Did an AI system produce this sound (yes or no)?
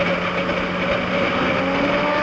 no